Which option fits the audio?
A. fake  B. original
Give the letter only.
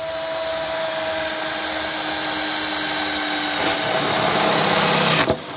B